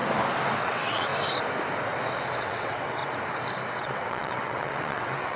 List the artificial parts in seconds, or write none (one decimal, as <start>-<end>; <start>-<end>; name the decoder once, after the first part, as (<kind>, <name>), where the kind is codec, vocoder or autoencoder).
0.6-1.1 (vocoder, WaveNeXt); 2.4-3.0; 3.7-5.4